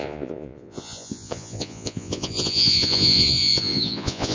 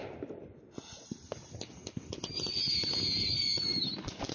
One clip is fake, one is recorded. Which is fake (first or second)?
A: first